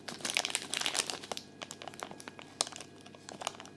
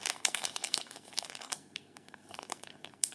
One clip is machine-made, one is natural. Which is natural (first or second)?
first